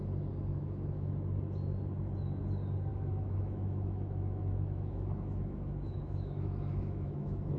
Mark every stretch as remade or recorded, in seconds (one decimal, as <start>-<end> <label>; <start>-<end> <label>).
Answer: 0.0-0.5 recorded; 0.5-1.1 remade; 1.1-2.9 recorded; 2.9-7.6 remade